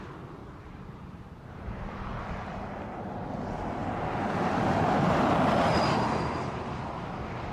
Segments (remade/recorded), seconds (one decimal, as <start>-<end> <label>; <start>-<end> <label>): 0.0-0.4 recorded; 0.4-1.1 remade; 1.1-3.8 recorded; 3.8-6.3 remade; 6.3-7.5 recorded